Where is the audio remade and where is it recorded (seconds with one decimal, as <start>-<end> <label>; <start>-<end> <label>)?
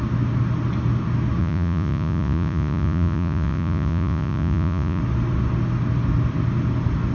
0.0-1.4 recorded; 1.4-5.0 remade; 5.0-7.1 recorded